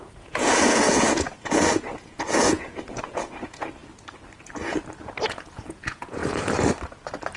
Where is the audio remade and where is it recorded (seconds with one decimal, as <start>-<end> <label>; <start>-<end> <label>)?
0.0-3.8 remade; 3.8-5.2 recorded; 5.2-6.2 remade; 6.2-7.4 recorded